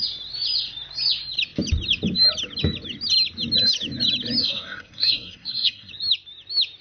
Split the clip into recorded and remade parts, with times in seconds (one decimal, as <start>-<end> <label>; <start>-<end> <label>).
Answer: 0.0-4.4 recorded; 4.4-5.9 remade; 5.9-6.8 recorded